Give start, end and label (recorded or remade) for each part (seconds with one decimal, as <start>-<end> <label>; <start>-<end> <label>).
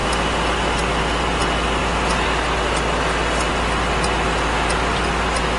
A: 0.0-1.0 remade; 1.0-5.6 recorded